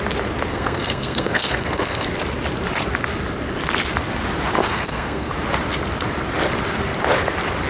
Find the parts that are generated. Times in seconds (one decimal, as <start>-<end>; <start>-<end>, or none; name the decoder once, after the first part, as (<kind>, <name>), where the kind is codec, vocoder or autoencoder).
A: 0.5-2.1 (codec, SNAC); 4.6-5.3